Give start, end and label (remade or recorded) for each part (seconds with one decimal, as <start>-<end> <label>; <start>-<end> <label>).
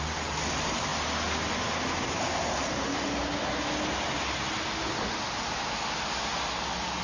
0.0-7.0 recorded